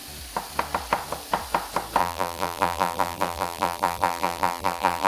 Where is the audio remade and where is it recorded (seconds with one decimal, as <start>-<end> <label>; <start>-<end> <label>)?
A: 0.0-2.0 recorded; 2.0-5.1 remade